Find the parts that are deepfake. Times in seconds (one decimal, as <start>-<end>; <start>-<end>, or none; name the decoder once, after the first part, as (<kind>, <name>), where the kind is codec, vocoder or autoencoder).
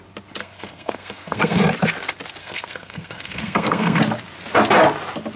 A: 0.4-1.6 (codec, SNAC); 2.4-4.0